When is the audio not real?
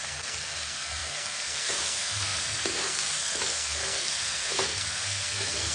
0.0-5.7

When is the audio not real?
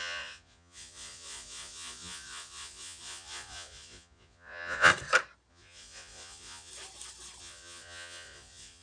0.0-4.9; 5.5-6.7; 7.4-8.8